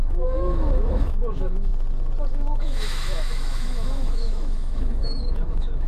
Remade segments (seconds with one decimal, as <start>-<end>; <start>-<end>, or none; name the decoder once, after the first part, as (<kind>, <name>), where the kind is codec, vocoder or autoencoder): 0.0-1.7 (autoencoder, DAC-VAE); 2.3-5.9